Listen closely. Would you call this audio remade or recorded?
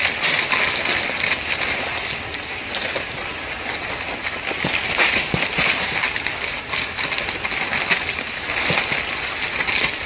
recorded